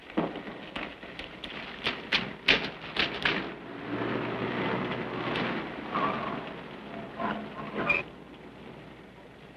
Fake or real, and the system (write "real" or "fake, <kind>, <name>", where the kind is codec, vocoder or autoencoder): real